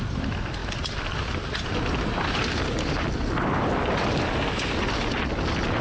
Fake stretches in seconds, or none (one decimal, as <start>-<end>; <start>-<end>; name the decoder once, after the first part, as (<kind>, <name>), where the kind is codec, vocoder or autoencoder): none